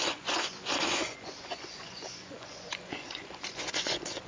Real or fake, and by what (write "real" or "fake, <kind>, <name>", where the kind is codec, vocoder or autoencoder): fake, vocoder, Vocos